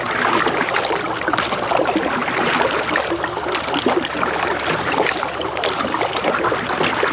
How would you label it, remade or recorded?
recorded